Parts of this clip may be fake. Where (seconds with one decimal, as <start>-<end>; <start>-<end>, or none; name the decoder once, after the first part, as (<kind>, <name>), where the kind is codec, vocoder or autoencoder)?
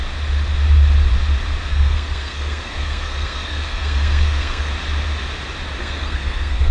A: 1.7-4.7 (codec, SNAC); 5.8-6.7